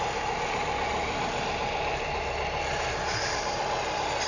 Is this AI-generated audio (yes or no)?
no